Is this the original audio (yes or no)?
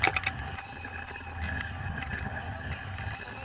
yes